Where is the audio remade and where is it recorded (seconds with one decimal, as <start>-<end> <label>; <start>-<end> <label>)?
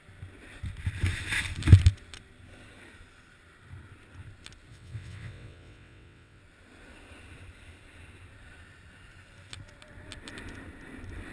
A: 0.0-4.7 recorded; 4.7-6.4 remade; 6.4-11.3 recorded